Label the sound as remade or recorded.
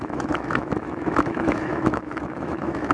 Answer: remade